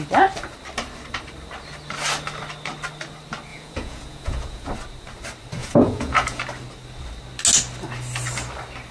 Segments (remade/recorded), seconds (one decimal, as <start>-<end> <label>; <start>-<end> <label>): 0.0-3.5 recorded; 3.5-4.7 remade; 4.7-5.6 recorded; 5.6-6.4 remade; 6.4-8.9 recorded